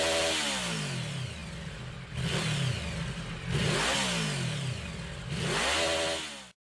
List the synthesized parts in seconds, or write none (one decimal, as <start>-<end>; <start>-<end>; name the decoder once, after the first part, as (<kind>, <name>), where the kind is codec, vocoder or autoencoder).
none